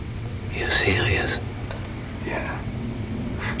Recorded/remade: remade